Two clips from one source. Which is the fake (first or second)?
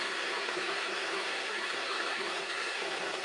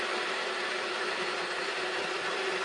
first